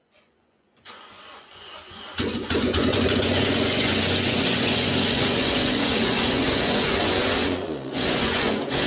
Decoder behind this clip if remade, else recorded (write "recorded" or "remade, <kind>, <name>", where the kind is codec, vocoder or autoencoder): remade, vocoder, Vocos